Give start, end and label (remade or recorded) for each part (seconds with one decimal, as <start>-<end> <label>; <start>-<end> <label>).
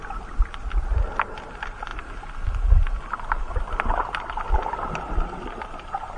0.0-6.2 recorded